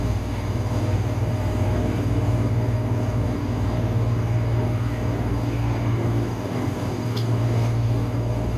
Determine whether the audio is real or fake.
fake